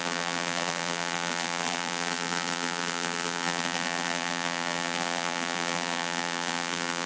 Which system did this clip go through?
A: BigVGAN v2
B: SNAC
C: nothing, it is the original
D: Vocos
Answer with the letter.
A